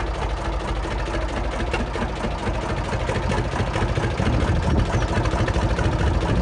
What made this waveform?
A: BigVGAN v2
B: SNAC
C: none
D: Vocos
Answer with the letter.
C